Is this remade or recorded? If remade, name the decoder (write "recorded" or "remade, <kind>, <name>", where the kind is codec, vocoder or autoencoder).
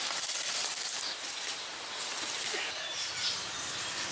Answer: recorded